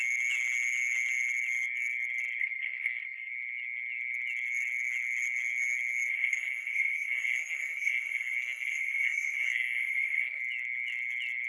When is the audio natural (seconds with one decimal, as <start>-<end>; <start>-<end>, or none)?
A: 0.0-2.4; 3.3-6.1; 10.4-11.5